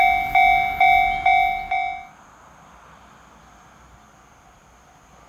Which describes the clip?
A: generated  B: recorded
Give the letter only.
B